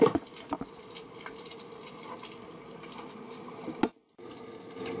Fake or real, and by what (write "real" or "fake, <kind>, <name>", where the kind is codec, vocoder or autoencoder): real